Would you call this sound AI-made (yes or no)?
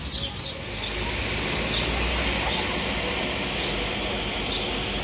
no